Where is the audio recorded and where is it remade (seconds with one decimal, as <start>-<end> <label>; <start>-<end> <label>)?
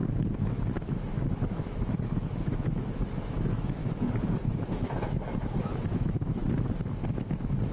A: 0.0-3.8 remade; 3.8-4.5 recorded; 4.5-6.4 remade; 6.4-7.1 recorded; 7.1-7.7 remade